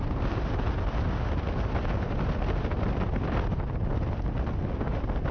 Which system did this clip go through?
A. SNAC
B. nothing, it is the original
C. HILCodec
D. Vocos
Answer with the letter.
B